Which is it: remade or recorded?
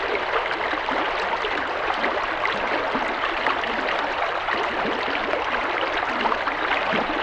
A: recorded